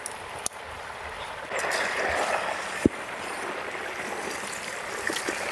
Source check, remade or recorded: recorded